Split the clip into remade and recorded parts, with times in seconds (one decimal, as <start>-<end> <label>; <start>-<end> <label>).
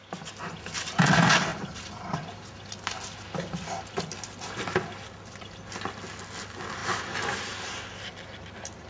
0.0-8.9 recorded